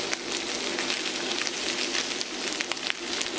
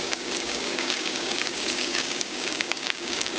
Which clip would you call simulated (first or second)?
second